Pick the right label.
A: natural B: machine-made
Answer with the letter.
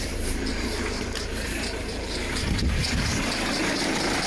B